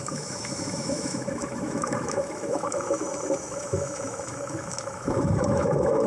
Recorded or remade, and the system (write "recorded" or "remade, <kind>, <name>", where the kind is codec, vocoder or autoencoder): remade, autoencoder, DAC-VAE